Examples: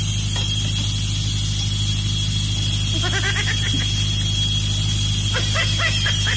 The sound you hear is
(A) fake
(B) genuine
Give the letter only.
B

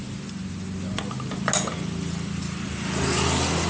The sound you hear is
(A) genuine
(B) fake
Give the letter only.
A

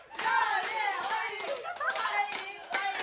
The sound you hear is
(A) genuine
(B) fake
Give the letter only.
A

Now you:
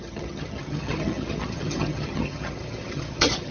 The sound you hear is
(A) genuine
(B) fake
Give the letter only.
B